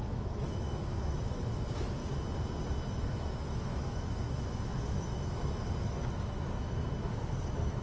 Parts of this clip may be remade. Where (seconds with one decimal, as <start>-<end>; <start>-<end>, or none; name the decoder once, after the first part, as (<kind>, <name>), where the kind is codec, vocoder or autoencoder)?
0.0-2.0 (autoencoder, DAC-VAE); 2.9-7.8